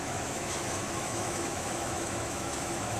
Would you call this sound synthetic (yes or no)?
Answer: yes